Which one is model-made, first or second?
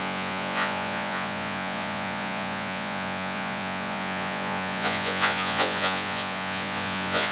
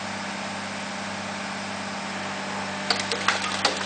first